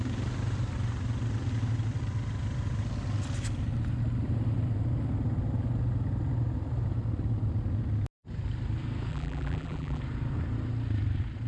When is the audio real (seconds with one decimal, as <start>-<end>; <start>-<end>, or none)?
0.0-9.1; 10.0-11.5